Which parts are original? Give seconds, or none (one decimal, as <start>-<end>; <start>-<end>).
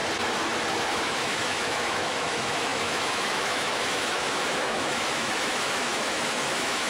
0.0-0.8